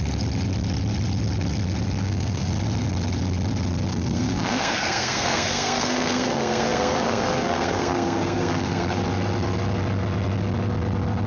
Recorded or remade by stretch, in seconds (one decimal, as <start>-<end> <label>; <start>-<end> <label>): 0.0-2.0 recorded; 2.0-2.5 remade; 2.5-3.9 recorded; 3.9-9.0 remade; 9.0-11.3 recorded